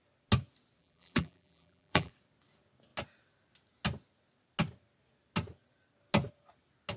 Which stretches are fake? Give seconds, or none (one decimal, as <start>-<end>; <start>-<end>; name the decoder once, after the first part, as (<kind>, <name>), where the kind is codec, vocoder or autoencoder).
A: 0.8-2.1 (vocoder, BigVGAN v2)